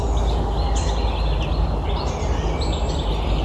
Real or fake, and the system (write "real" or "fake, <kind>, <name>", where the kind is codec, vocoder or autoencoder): real